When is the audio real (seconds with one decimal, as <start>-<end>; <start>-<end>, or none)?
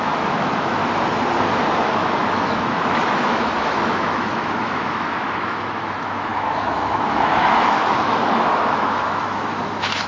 0.8-1.8